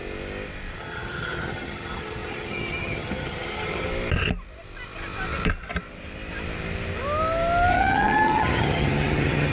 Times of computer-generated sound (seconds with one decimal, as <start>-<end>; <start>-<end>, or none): 0.8-3.9; 7.7-9.5